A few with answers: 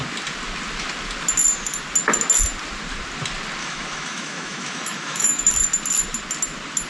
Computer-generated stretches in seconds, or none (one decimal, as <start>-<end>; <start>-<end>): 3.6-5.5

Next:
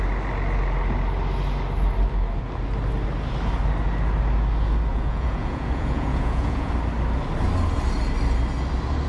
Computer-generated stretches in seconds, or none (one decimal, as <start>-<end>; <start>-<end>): 4.9-6.7

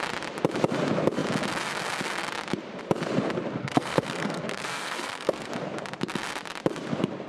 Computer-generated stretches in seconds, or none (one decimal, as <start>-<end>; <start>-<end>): 3.6-5.5

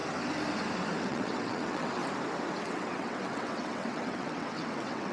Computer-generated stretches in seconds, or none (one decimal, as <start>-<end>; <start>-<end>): 1.0-2.0; 2.6-5.1

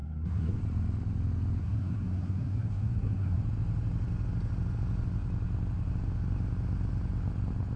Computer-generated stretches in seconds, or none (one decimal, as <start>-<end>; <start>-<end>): 0.0-0.6; 1.6-3.4

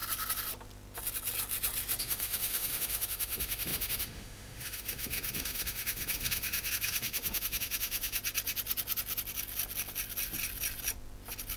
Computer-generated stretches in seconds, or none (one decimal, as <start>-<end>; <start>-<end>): 2.0-8.2

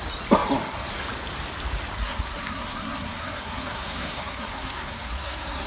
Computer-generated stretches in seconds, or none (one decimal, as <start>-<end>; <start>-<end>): 2.0-5.7

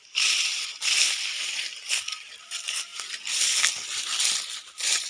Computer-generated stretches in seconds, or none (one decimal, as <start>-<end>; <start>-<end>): 0.0-0.8